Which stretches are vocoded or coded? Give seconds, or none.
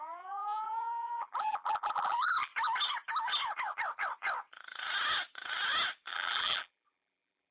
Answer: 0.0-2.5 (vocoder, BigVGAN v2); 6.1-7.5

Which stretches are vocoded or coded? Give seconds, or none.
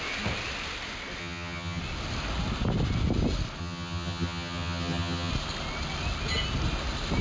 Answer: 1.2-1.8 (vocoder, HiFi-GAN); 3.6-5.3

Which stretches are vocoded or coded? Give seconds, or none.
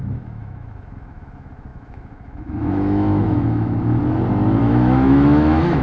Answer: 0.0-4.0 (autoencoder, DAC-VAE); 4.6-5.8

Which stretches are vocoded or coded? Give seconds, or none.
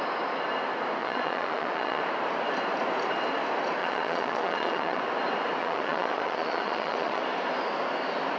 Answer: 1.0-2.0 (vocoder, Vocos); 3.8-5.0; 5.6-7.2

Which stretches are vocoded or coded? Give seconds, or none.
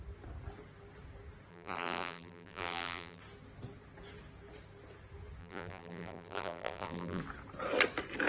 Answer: 1.5-3.2 (vocoder, BigVGAN v2); 5.4-7.2